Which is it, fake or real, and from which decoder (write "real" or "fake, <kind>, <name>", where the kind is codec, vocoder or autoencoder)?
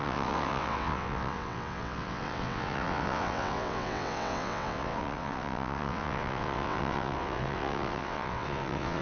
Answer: fake, vocoder, WaveNeXt